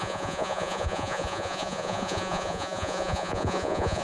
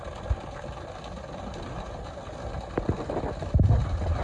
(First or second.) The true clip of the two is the second